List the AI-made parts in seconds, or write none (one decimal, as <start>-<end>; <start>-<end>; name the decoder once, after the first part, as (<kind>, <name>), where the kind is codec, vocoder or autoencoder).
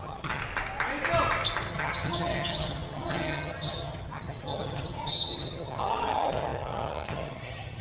0.0-0.4 (vocoder, HiFi-GAN); 1.7-7.8